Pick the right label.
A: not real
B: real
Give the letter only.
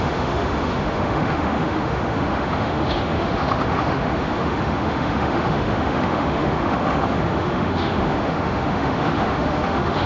A